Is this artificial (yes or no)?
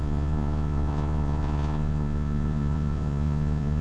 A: yes